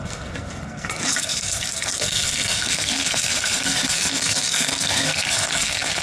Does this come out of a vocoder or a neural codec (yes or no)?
yes